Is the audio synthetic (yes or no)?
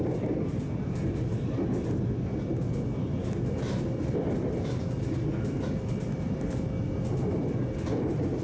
no